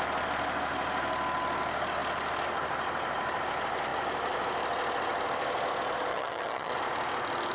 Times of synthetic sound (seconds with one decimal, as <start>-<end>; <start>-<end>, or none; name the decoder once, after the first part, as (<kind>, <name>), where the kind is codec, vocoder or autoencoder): 6.1-6.7 (vocoder, HiFi-GAN)